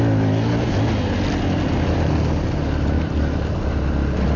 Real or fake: real